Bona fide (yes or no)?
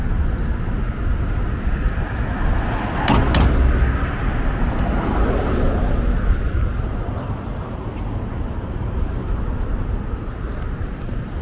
yes